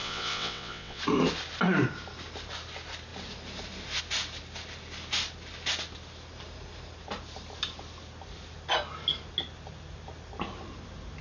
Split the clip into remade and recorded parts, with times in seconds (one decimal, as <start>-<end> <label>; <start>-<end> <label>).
0.0-1.0 remade; 1.0-11.2 recorded